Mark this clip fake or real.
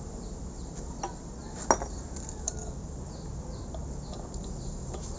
real